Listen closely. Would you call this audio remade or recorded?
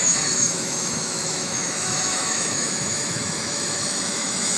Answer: remade